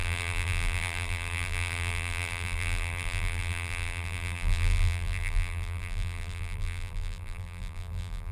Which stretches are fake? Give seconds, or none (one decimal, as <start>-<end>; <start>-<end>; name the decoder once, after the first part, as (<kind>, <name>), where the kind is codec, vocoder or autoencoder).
0.0-8.3 (vocoder, BigVGAN v2)